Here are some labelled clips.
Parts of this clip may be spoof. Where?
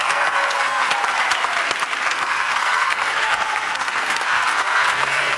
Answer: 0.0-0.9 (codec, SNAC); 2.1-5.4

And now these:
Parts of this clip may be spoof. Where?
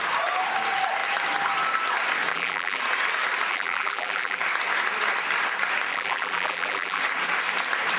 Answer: 2.3-2.8 (vocoder, BigVGAN v2); 3.5-4.4; 5.9-7.0